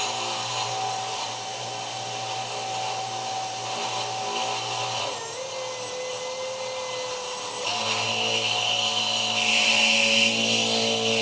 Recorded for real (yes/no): yes